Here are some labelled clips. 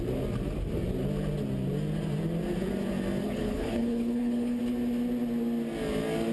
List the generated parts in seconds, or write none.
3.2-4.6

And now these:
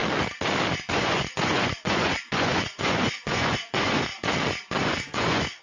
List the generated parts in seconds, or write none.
0.9-4.1; 4.8-5.6

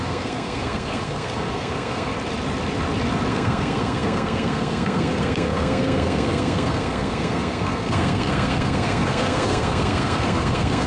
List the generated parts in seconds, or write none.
0.0-2.1; 3.3-10.9

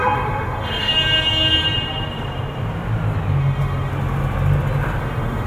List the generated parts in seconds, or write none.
0.0-0.9; 3.4-3.9; 5.0-5.5

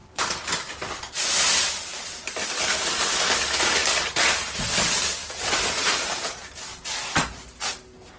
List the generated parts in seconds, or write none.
0.0-3.0; 3.8-4.6; 5.2-5.7

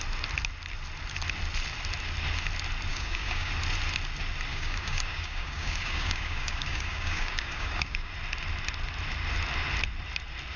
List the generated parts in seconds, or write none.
2.9-3.5; 4.5-8.1

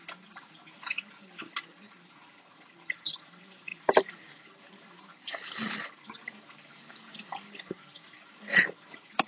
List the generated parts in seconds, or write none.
0.0-9.3

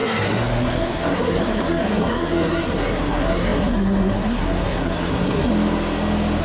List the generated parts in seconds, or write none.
0.0-5.5